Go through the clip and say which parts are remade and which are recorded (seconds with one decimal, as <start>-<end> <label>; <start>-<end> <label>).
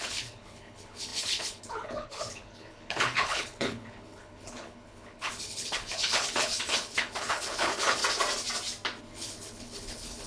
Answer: 0.0-8.0 remade; 8.0-9.0 recorded; 9.0-10.3 remade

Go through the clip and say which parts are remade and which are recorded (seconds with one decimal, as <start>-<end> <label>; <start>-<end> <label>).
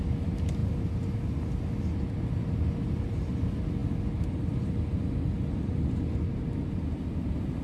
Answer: 0.0-7.6 recorded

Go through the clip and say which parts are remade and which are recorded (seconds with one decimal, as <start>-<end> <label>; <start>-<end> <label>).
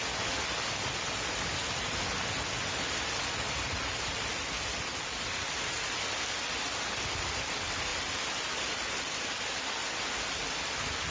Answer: 0.0-11.1 recorded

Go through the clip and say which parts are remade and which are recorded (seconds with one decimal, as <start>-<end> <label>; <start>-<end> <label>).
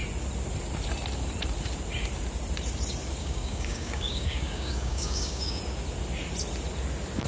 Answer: 0.0-3.2 recorded; 3.2-5.6 remade; 5.6-7.3 recorded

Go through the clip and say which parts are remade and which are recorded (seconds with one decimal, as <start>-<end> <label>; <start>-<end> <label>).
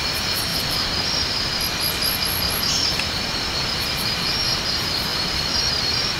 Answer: 0.0-0.5 recorded; 0.5-1.2 remade; 1.2-5.1 recorded; 5.1-5.7 remade; 5.7-6.2 recorded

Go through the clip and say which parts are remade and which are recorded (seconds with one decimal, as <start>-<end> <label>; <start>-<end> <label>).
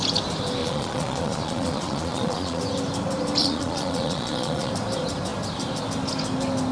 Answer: 0.0-0.6 recorded; 0.6-2.6 remade; 2.6-3.4 recorded; 3.4-4.7 remade; 4.7-6.7 recorded